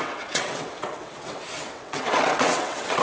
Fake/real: fake